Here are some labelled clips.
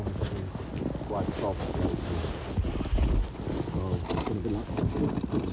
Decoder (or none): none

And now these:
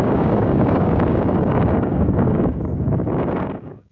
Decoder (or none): codec, DAC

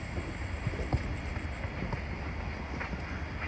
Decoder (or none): none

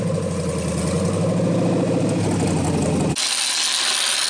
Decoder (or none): none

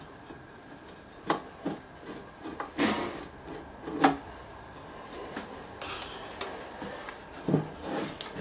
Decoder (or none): none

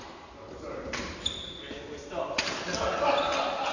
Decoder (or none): none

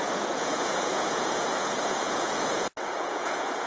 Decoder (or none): vocoder, Vocos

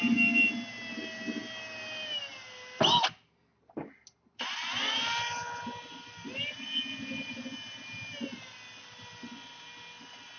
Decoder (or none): none